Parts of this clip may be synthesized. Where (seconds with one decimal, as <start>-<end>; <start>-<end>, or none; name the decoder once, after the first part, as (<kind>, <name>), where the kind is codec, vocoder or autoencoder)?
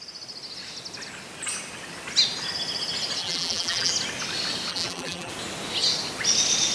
3.2-3.9 (vocoder, BigVGAN v2); 4.7-5.3